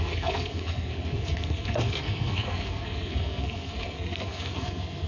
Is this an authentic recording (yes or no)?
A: no